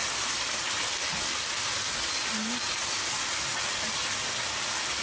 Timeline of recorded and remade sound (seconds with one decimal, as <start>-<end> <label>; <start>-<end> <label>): 0.0-5.0 recorded